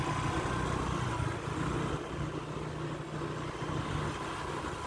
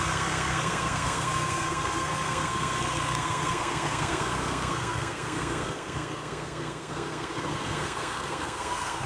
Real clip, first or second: first